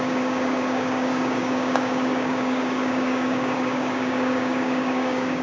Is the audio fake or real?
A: fake